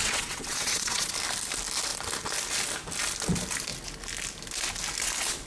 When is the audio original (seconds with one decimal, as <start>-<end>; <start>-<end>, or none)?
1.1-5.5